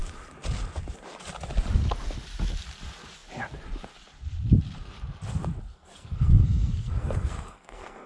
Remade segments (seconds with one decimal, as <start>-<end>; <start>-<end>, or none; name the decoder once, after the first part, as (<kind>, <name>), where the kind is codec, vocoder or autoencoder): 5.7-8.1 (codec, SNAC)